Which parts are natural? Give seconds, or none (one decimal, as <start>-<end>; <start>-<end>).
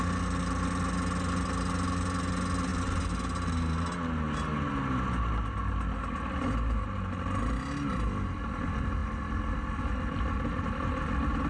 0.0-11.5